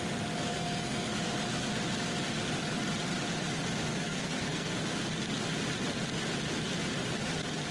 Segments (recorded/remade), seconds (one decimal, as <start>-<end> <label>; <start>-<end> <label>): 0.0-0.5 recorded; 0.5-1.1 remade; 1.1-3.9 recorded; 3.9-4.8 remade; 4.8-7.7 recorded